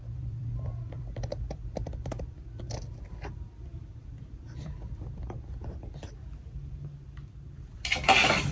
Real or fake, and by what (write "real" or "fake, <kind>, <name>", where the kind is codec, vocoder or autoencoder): fake, vocoder, BigVGAN v2